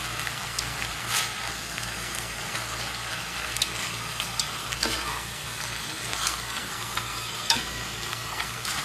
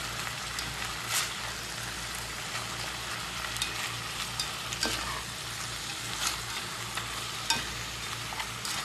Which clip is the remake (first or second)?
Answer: first